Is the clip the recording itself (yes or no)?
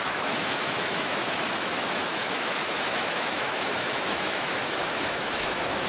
no